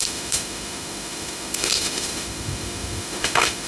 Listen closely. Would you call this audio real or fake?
fake